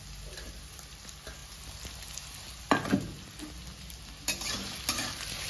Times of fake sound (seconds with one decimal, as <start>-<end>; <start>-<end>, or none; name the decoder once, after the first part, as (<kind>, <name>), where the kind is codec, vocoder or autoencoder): none